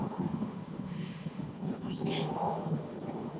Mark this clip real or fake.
fake